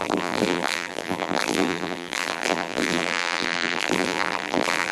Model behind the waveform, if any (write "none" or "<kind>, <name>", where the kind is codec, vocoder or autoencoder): vocoder, BigVGAN v2